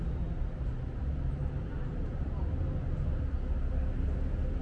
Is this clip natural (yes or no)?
yes